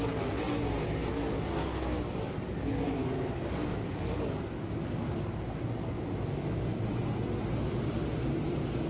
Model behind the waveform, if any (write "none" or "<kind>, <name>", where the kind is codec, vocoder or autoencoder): none